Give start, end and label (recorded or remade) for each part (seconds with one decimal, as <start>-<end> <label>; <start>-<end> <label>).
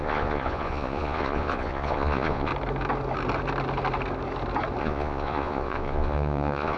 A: 0.0-2.5 remade; 2.5-4.8 recorded; 4.8-6.8 remade